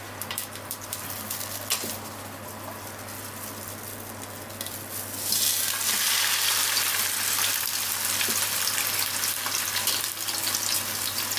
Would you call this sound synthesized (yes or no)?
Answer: no